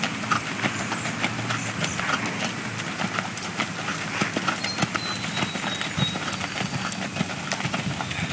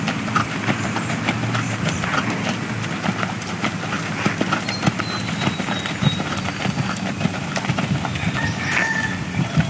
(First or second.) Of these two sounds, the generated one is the second